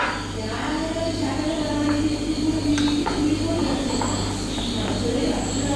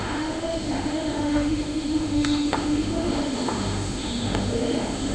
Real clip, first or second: first